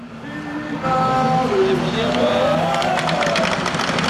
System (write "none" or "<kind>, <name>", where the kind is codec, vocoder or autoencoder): none